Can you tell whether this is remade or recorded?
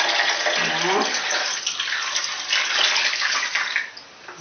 recorded